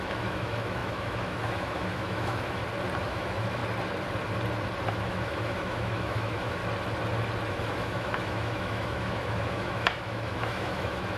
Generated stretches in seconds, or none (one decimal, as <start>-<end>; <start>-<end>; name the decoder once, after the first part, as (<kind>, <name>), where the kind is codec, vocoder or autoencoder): 0.0-2.6 (autoencoder, DAC-VAE); 3.1-3.6; 4.9-6.6; 7.5-11.2